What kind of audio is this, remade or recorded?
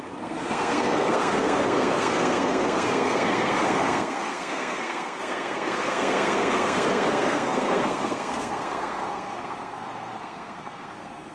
remade